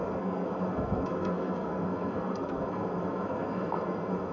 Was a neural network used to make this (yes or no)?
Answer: yes